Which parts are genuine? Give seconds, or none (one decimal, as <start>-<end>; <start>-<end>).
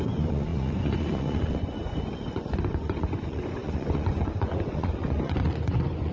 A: none